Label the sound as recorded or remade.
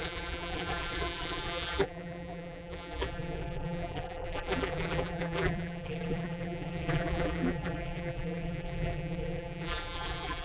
remade